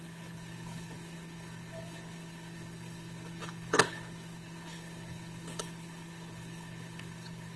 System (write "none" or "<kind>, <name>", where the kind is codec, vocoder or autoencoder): codec, HILCodec